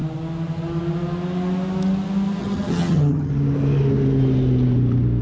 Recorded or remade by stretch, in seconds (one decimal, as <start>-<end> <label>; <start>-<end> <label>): 0.0-2.4 recorded; 2.4-3.3 remade; 3.3-5.2 recorded